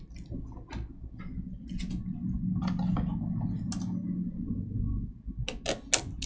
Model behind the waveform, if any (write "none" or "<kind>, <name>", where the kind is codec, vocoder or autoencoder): none